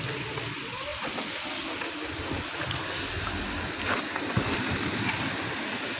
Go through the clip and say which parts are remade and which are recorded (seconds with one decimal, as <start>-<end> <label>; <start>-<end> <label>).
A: 0.0-6.0 recorded